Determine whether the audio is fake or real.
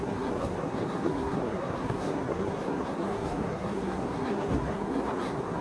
fake